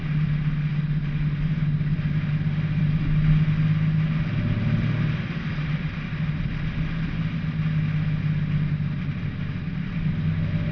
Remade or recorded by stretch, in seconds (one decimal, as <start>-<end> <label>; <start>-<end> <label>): 0.0-10.7 recorded